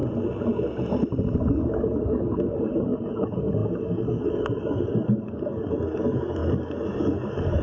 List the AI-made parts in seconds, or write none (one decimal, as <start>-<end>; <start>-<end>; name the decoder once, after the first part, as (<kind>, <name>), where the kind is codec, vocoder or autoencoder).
1.4-7.6 (codec, DAC)